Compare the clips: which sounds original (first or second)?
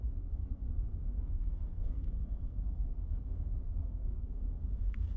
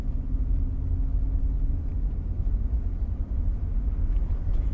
second